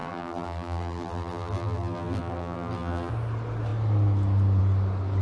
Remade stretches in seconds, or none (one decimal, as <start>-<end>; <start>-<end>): 0.0-3.1